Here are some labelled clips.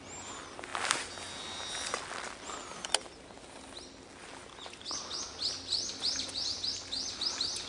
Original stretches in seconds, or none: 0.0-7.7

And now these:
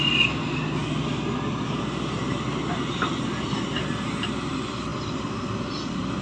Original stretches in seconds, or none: 0.0-0.8; 4.5-6.2

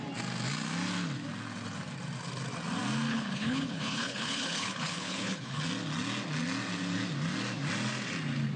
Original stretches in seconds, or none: 0.0-3.1; 5.6-8.6

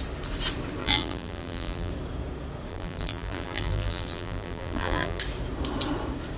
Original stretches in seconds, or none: 0.0-0.8; 1.9-2.7; 5.2-6.4

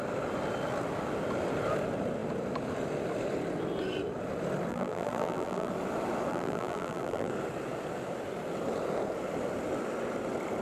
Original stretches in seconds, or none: 0.0-4.7; 5.7-6.3; 7.3-10.6